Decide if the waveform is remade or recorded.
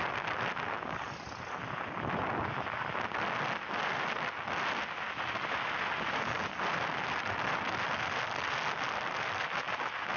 recorded